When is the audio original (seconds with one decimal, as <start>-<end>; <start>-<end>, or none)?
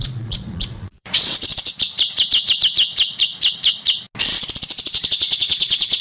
1.5-5.1